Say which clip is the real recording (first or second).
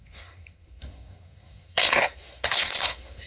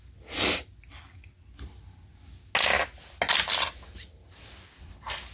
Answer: second